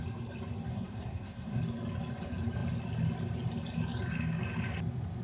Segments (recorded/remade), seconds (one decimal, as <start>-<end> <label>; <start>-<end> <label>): 0.0-0.7 recorded; 0.7-1.6 remade; 1.6-5.2 recorded